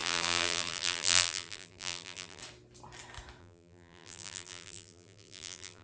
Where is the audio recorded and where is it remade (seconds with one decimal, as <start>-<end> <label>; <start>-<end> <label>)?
0.0-2.4 remade; 2.4-3.4 recorded; 3.4-5.8 remade